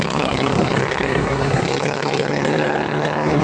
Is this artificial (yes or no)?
yes